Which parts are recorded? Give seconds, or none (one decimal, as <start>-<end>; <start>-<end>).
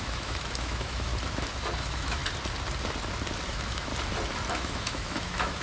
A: 1.1-1.8; 2.2-3.5; 3.9-4.5